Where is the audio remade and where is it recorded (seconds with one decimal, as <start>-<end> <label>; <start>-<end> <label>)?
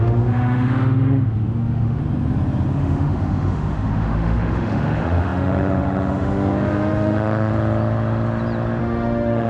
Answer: 0.0-2.0 remade; 2.0-2.7 recorded; 2.7-7.5 remade; 7.5-8.8 recorded; 8.8-9.5 remade